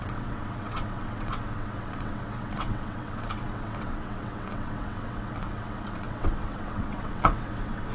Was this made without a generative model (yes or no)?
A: no